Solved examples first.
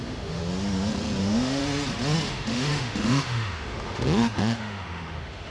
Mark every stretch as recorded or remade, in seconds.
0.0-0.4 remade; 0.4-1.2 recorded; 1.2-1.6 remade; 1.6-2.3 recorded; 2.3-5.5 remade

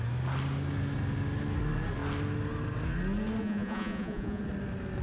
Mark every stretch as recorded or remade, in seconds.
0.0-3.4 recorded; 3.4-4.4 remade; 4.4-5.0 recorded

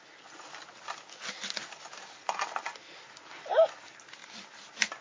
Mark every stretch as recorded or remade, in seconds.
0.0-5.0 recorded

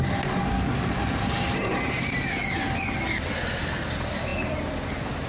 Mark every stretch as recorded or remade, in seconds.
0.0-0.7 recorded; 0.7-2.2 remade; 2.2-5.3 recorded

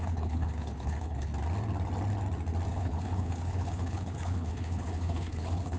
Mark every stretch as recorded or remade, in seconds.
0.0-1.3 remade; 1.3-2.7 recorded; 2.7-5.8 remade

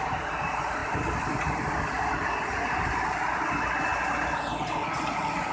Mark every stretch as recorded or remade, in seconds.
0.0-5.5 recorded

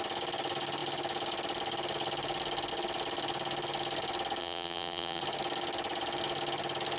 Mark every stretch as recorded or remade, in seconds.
0.0-4.4 recorded; 4.4-5.2 remade; 5.2-7.0 recorded

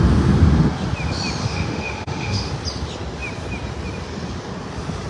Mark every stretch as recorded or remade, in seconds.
0.0-1.4 recorded; 1.4-2.5 remade; 2.5-5.1 recorded